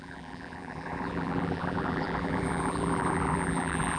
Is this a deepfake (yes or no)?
yes